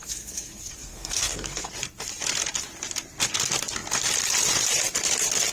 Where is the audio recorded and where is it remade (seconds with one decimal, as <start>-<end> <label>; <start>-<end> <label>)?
0.0-1.7 remade; 1.7-5.5 recorded